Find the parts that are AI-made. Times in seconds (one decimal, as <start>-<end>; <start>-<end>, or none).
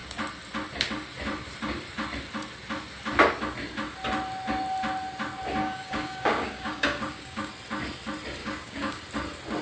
5.6-7.5; 8.4-9.0